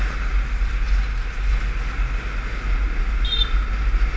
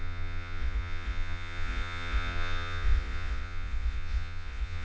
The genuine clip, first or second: first